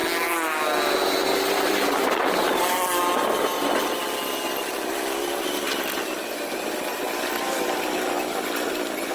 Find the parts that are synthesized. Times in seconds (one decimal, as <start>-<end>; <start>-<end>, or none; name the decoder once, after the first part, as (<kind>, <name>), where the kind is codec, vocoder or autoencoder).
none